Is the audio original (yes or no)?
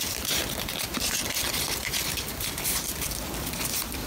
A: yes